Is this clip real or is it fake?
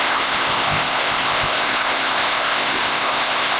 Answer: fake